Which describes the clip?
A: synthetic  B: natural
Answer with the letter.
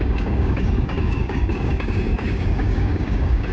A